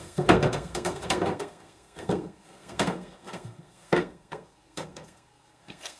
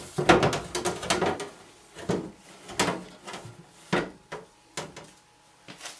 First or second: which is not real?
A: first